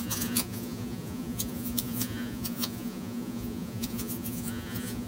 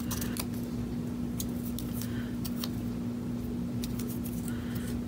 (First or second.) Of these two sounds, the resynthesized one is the first